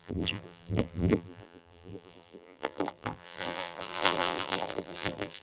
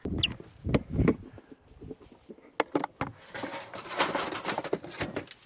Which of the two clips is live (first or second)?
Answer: second